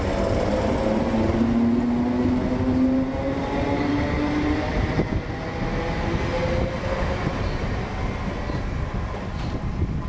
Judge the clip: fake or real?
real